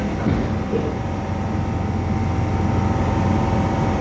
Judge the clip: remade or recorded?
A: recorded